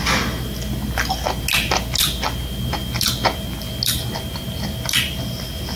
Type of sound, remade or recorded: recorded